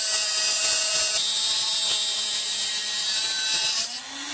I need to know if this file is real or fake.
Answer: real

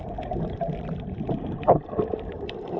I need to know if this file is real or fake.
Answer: fake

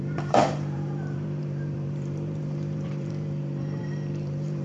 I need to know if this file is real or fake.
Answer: fake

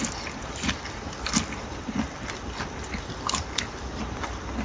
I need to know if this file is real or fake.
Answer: real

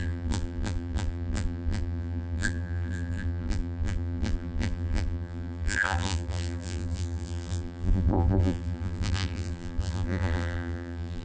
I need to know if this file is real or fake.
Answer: fake